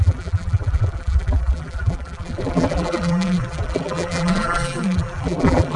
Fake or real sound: fake